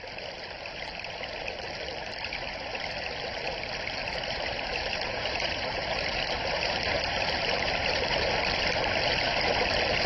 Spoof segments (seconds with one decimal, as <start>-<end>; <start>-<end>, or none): 4.0-8.3